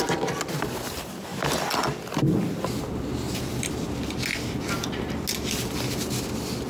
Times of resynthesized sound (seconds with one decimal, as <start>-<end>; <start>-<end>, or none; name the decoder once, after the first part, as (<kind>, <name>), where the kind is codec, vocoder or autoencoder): none